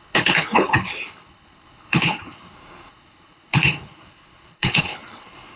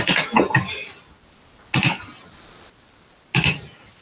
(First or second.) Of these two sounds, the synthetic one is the first